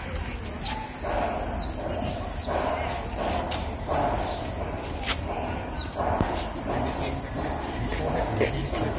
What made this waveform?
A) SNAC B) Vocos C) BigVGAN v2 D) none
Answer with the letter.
D